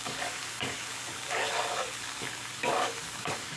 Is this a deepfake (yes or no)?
yes